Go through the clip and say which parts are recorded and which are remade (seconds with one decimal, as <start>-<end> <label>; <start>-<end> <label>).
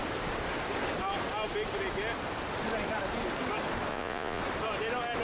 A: 0.0-3.9 recorded; 3.9-4.4 remade; 4.4-5.2 recorded